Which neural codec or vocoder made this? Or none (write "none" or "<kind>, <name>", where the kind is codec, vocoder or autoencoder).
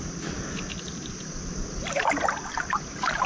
none